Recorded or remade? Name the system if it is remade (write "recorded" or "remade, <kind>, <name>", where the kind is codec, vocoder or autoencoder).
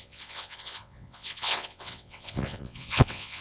remade, vocoder, WaveNeXt